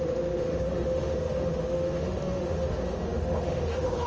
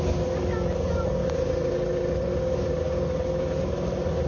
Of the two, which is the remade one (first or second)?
first